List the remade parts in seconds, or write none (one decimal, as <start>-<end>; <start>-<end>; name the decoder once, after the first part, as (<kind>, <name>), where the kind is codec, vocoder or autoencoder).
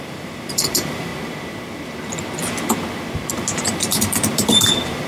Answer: 0.0-1.1 (vocoder, BigVGAN v2); 3.3-5.1